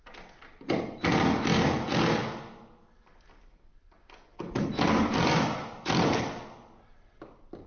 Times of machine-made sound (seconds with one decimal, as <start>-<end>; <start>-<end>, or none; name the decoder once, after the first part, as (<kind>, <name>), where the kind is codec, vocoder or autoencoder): none